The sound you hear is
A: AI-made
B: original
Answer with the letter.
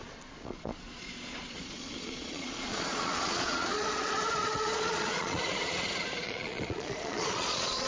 A